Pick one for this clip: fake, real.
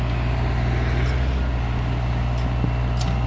real